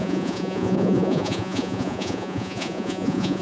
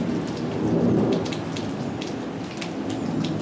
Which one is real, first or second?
second